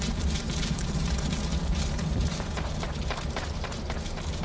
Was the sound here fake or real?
fake